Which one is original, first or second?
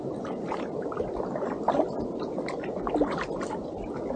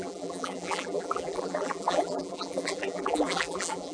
first